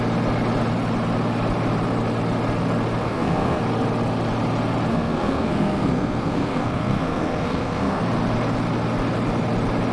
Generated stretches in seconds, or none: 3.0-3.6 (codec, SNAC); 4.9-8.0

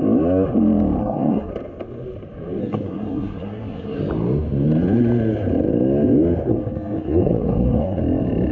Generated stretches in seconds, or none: 1.0-1.5 (codec, SNAC); 2.6-4.0; 6.5-8.0

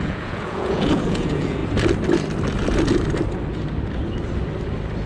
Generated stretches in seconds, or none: 0.0-1.6 (vocoder, Vocos)

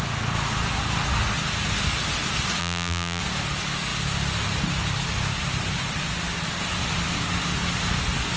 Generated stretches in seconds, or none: 2.6-3.2 (vocoder, BigVGAN v2)

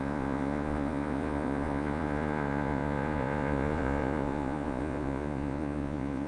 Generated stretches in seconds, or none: 0.0-6.3 (vocoder, Vocos)